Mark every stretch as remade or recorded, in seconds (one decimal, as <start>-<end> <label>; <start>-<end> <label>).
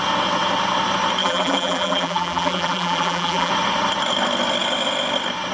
0.0-1.2 recorded; 1.2-3.5 remade; 3.5-5.5 recorded